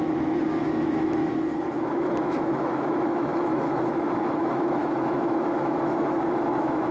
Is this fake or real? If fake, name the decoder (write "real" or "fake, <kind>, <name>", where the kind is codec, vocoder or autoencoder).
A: fake, autoencoder, DAC-VAE